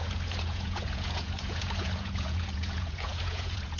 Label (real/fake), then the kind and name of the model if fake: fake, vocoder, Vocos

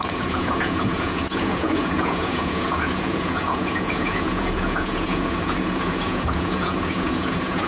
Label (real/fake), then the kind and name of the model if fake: fake, vocoder, Vocos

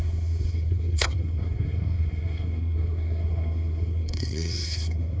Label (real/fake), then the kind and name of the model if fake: fake, codec, SNAC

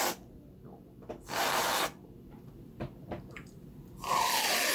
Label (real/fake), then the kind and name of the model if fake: real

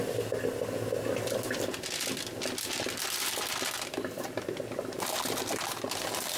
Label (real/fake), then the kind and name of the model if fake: real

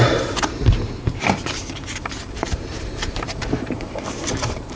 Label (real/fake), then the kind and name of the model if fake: fake, vocoder, BigVGAN v2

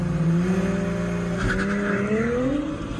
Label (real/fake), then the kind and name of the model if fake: real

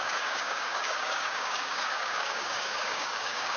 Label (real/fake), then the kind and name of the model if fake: fake, codec, DAC